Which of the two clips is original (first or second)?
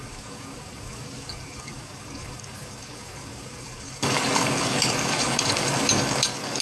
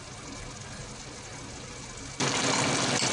second